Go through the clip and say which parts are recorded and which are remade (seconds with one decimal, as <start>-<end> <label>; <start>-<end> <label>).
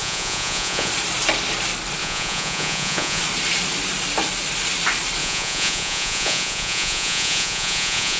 0.0-0.9 remade; 0.9-2.0 recorded; 2.0-3.2 remade; 3.2-5.2 recorded; 5.2-8.2 remade